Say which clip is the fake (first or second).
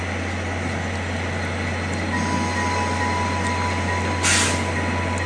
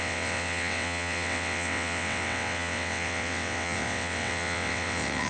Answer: second